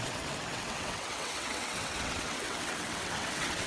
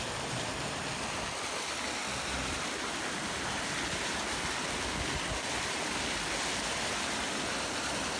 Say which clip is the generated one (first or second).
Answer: first